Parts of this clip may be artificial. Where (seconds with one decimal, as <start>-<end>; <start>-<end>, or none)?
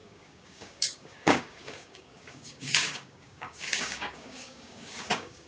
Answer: 0.0-5.5